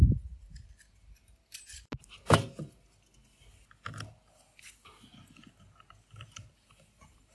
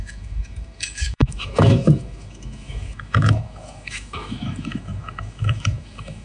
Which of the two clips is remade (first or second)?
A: second